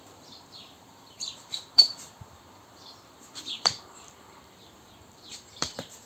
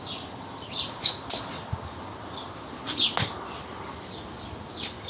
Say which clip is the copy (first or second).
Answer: first